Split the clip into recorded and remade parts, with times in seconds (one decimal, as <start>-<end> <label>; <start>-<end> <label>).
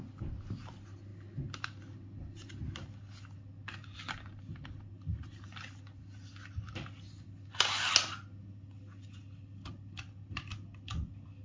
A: 0.0-11.4 recorded